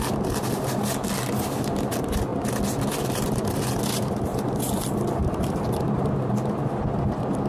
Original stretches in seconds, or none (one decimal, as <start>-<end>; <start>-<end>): 0.0-5.2; 6.0-7.5